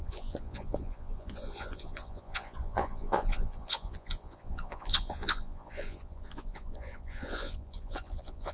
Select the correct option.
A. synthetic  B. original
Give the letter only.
A